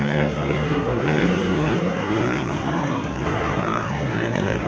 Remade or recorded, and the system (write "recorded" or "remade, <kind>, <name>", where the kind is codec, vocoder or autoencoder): remade, codec, SNAC